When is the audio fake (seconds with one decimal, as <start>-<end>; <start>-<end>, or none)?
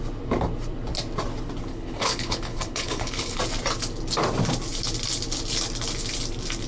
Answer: 1.7-3.4